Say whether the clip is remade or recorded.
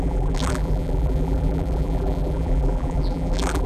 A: remade